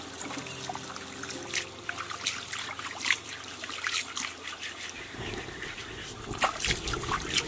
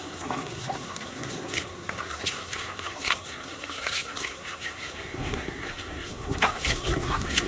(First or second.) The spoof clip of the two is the second